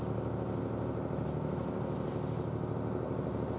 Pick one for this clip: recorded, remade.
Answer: recorded